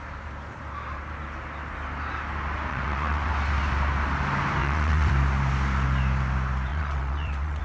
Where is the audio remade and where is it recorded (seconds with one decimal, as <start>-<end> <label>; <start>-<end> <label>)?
0.0-2.7 recorded; 2.7-3.3 remade; 3.3-4.6 recorded; 4.6-5.1 remade; 5.1-6.7 recorded; 6.7-7.6 remade